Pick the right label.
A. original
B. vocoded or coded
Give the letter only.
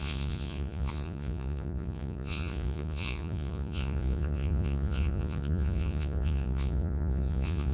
B